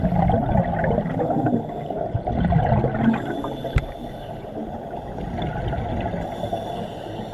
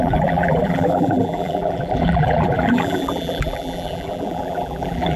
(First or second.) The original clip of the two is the first